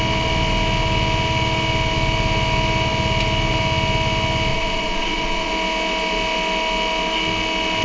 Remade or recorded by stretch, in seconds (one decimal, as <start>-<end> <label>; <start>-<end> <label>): 0.0-4.5 recorded; 4.5-5.5 remade; 5.5-7.8 recorded